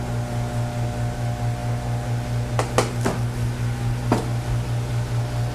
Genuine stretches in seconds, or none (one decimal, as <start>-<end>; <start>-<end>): 0.0-5.5